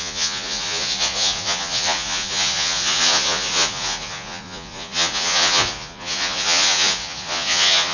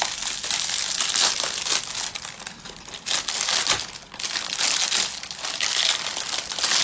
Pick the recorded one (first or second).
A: second